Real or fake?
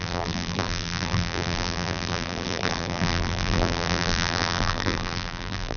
fake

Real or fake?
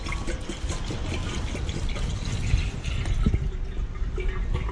real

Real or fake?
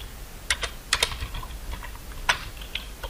real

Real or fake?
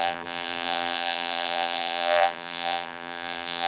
fake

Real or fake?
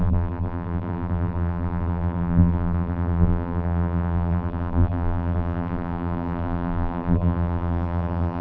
fake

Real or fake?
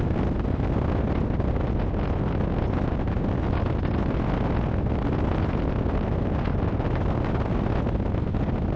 real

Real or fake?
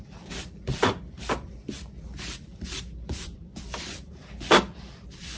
fake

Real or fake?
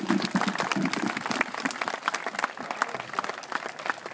real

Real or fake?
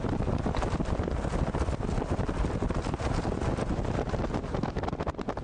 real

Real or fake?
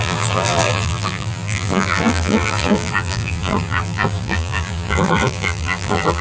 fake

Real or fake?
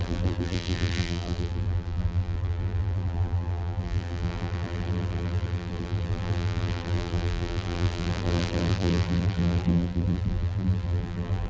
fake